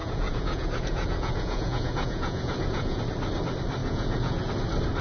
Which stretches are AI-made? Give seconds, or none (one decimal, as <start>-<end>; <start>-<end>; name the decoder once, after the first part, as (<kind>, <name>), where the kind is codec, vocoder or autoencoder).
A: 0.0-3.0 (vocoder, Vocos); 3.8-4.5